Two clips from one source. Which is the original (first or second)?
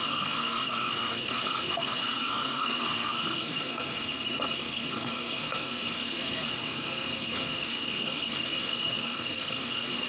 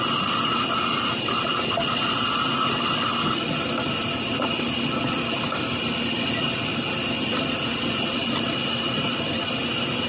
second